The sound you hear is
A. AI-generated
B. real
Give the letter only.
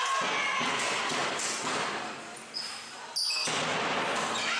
B